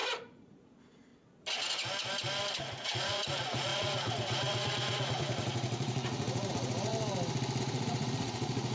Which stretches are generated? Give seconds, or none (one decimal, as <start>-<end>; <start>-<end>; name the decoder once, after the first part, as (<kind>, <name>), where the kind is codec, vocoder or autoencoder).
0.0-1.1 (vocoder, Vocos); 2.6-6.9; 7.6-8.7